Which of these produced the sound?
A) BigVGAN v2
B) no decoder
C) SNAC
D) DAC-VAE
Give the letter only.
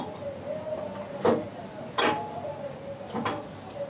B